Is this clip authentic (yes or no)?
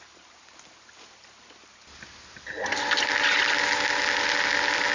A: yes